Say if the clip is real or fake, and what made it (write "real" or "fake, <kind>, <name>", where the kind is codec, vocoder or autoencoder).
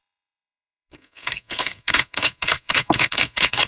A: fake, codec, SNAC